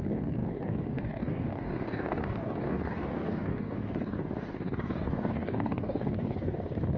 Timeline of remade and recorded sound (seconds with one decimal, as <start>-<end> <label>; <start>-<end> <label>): 0.0-7.0 remade